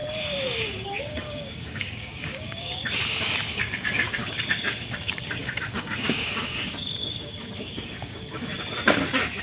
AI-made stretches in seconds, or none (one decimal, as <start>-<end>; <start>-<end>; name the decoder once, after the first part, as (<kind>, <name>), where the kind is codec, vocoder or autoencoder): 1.0-8.5 (codec, DAC)